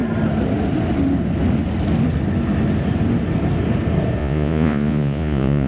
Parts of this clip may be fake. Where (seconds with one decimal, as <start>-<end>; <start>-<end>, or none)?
4.2-5.7